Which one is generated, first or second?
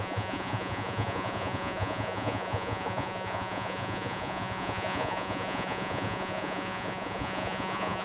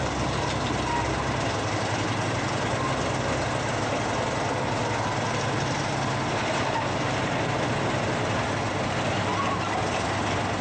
first